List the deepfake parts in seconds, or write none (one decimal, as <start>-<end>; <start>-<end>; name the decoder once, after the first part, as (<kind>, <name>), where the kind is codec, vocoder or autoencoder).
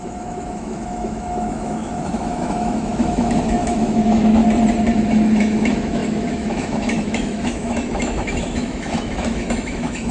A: 0.0-4.4 (autoencoder, DAC-VAE); 5.4-10.1